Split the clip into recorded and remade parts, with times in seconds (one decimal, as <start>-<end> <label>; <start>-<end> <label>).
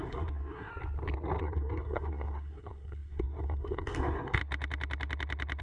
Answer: 0.0-0.7 remade; 0.7-1.4 recorded; 1.4-4.4 remade; 4.4-5.6 recorded